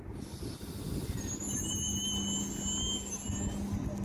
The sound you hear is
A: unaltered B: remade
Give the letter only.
A